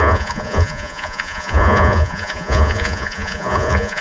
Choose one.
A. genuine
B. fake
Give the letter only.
B